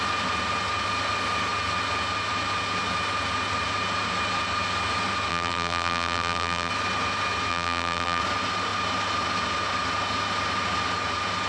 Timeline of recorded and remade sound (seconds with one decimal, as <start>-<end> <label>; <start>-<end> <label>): 0.0-5.3 recorded; 5.3-6.7 remade; 6.7-7.5 recorded; 7.5-8.2 remade; 8.2-11.5 recorded